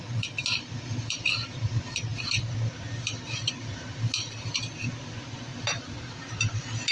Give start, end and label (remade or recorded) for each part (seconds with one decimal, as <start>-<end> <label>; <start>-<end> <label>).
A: 0.0-6.9 recorded

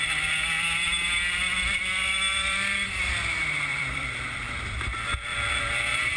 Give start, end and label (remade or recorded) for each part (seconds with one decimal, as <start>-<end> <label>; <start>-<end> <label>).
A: 0.0-2.3 recorded; 2.3-3.1 remade; 3.1-3.7 recorded; 3.7-4.6 remade; 4.6-5.3 recorded; 5.3-6.2 remade

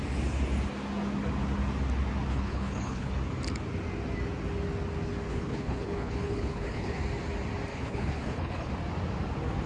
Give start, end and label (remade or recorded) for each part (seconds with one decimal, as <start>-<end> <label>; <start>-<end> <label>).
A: 0.0-2.3 recorded; 2.3-3.1 remade; 3.1-5.3 recorded; 5.3-7.0 remade; 7.0-7.7 recorded; 7.7-8.7 remade; 8.7-9.7 recorded

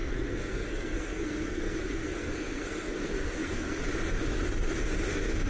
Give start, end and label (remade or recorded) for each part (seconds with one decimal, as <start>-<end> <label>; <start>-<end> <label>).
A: 0.0-3.8 remade; 3.8-5.1 recorded; 5.1-5.5 remade

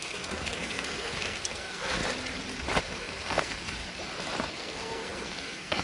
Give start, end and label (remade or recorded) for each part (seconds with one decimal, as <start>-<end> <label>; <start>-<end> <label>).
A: 0.0-2.0 remade; 2.0-2.8 recorded; 2.8-3.8 remade; 3.8-4.5 recorded; 4.5-5.8 remade

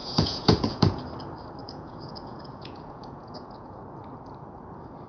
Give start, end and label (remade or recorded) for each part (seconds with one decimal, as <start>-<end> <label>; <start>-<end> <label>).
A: 0.0-1.0 remade; 1.0-1.6 recorded; 1.6-3.8 remade; 3.8-5.1 recorded

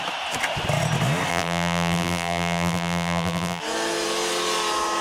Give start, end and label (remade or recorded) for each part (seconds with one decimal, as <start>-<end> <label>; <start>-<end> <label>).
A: 0.0-1.3 recorded; 1.3-3.6 remade; 3.6-5.0 recorded

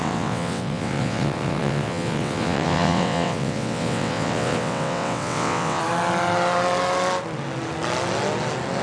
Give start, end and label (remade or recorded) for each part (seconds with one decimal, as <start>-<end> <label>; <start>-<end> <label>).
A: 0.0-5.8 remade; 5.8-8.8 recorded